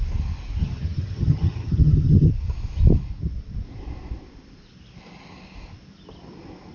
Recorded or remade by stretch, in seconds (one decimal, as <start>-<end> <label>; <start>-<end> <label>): 0.0-0.6 recorded; 0.6-2.3 remade; 2.3-6.7 recorded